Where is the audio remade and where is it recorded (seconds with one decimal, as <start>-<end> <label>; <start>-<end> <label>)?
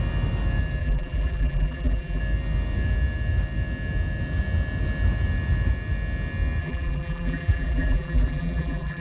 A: 0.0-0.8 recorded; 0.8-2.2 remade; 2.2-6.6 recorded; 6.6-9.0 remade